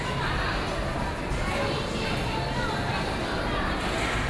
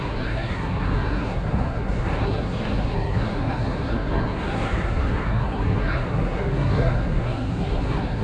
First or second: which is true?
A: first